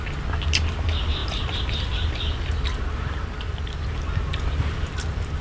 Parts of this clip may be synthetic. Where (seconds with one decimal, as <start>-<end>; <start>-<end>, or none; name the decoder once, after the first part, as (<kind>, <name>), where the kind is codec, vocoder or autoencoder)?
1.2-2.5 (vocoder, BigVGAN v2)